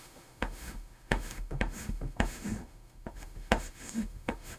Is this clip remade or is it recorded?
remade